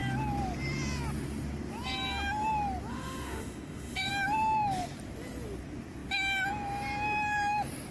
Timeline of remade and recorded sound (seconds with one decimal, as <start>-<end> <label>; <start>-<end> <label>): 0.0-2.9 recorded; 2.9-4.1 remade; 4.1-7.9 recorded